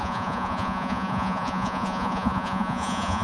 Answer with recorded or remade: remade